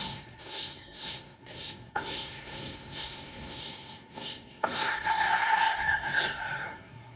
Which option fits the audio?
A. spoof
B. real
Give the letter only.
A